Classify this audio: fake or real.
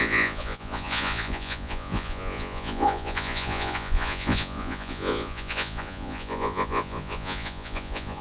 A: fake